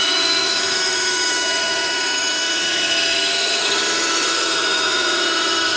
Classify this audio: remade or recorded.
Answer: remade